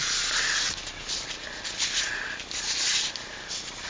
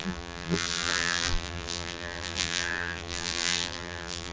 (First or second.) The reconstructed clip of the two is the second